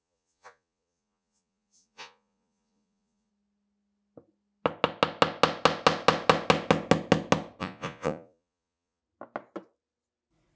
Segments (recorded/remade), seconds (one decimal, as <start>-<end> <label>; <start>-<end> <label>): 0.0-3.3 remade; 3.3-7.6 recorded; 7.6-9.0 remade; 9.0-10.6 recorded